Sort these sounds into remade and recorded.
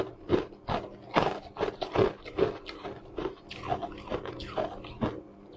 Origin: recorded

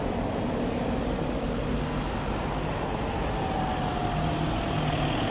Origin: recorded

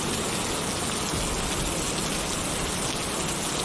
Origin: recorded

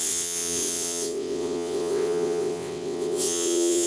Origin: remade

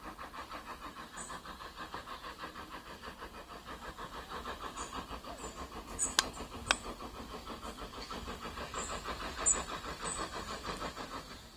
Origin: recorded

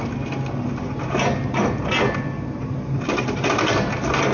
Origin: recorded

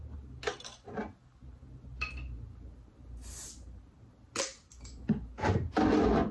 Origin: recorded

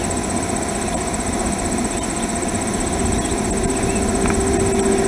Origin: recorded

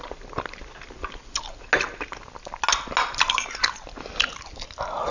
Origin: recorded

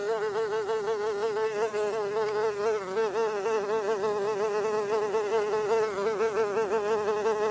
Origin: recorded